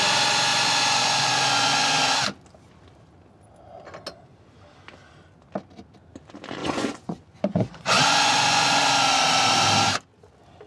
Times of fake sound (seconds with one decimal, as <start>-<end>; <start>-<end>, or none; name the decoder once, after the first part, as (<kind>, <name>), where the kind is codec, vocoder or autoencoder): 0.5-1.9 (vocoder, Vocos); 6.6-8.8